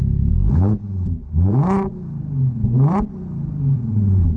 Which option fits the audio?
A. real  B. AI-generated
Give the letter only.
B